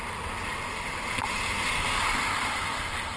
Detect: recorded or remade recorded